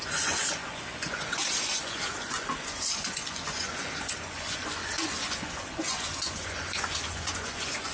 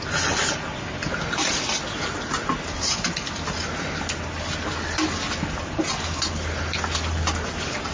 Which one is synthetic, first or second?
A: first